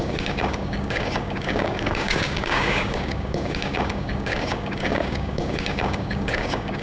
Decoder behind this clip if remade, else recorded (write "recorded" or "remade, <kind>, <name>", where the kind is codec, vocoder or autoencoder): remade, codec, DAC